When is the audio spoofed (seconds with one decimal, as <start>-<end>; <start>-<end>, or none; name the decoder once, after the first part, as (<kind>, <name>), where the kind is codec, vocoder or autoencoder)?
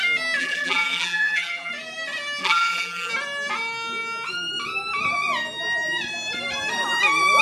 0.4-1.7 (vocoder, BigVGAN v2); 2.4-3.1